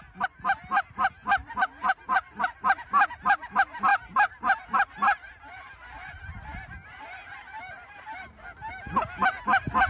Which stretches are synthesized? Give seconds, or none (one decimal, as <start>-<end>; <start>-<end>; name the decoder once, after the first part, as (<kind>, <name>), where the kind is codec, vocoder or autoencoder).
1.4-2.6 (vocoder, BigVGAN v2); 3.9-8.2